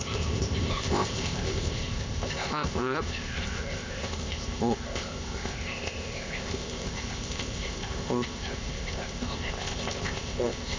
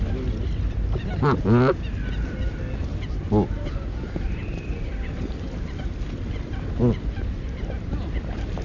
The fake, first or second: first